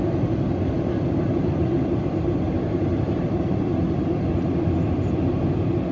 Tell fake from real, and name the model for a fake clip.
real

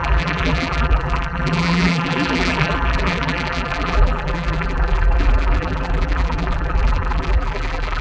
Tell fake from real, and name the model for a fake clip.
fake, vocoder, BigVGAN v2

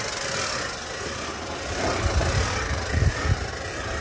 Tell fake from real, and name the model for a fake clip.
real